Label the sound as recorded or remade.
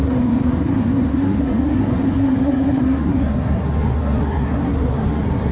remade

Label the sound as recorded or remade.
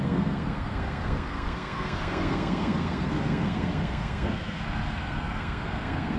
remade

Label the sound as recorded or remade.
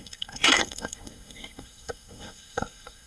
remade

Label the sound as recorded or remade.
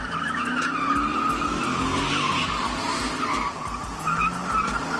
recorded